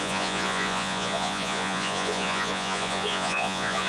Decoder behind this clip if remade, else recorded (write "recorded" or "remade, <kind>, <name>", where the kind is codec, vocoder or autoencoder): remade, vocoder, Vocos